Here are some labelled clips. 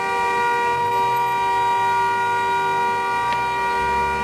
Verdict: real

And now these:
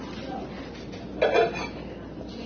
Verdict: real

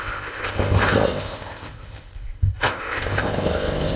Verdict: fake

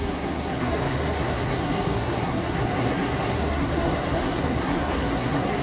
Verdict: fake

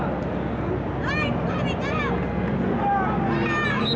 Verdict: real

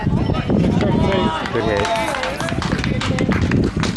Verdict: real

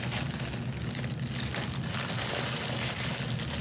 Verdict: real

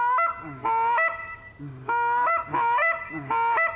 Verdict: real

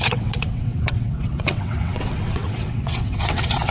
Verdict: fake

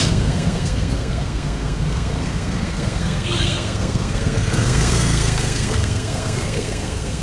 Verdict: fake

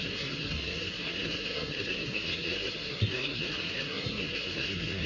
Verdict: fake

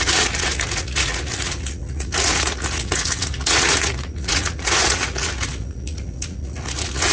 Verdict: fake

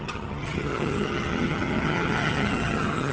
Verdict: fake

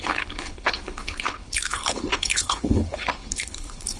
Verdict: fake